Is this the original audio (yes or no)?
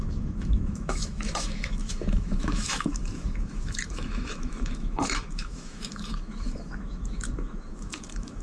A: no